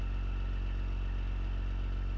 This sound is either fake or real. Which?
real